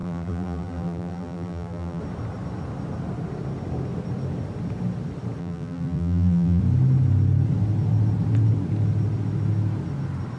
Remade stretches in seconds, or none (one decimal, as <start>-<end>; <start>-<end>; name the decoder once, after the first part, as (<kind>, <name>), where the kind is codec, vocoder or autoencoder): 0.0-2.0 (vocoder, BigVGAN v2); 5.4-6.6